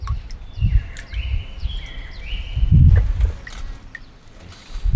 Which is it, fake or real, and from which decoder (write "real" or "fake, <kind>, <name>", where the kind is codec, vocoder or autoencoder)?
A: real